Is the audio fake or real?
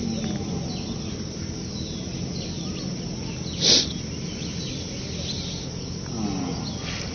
real